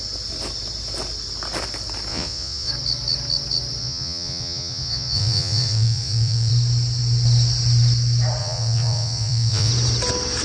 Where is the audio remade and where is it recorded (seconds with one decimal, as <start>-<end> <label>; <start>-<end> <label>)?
0.0-2.1 recorded; 2.1-2.7 remade; 2.7-3.8 recorded; 3.8-6.5 remade; 6.5-8.4 recorded; 8.4-9.7 remade; 9.7-10.4 recorded